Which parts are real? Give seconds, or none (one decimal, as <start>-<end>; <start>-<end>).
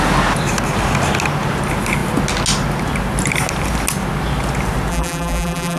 0.0-4.9